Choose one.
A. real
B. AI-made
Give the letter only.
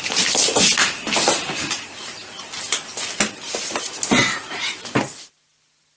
A